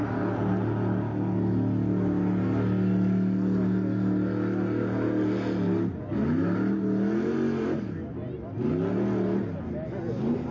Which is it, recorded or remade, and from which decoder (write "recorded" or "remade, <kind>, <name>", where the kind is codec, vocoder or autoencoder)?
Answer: recorded